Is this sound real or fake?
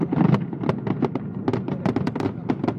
real